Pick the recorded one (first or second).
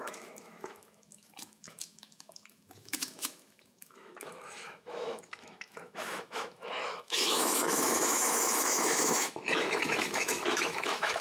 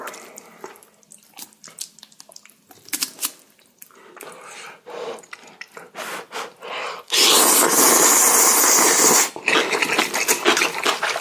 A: second